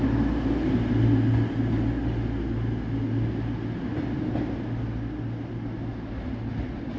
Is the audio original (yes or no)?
yes